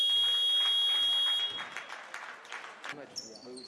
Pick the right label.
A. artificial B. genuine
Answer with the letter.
B